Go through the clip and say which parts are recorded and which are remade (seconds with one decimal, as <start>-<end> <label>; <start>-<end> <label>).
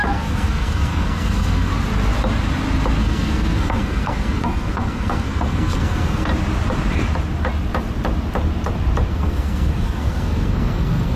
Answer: 0.0-1.7 remade; 1.7-3.0 recorded; 3.0-6.3 remade; 6.3-9.1 recorded; 9.1-11.2 remade